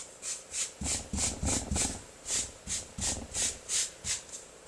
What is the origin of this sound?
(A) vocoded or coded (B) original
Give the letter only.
B